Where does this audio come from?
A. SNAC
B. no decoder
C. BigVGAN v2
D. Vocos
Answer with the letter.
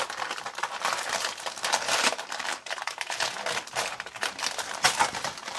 C